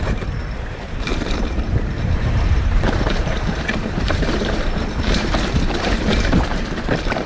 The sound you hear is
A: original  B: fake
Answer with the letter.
B